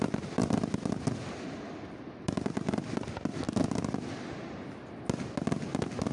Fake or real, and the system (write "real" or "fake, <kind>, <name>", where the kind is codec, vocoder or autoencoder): real